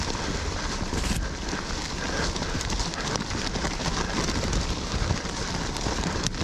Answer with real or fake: real